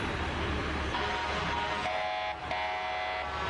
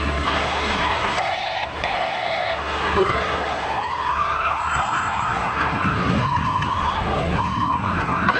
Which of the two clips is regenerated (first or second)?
second